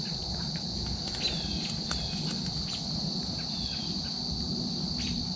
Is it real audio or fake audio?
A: real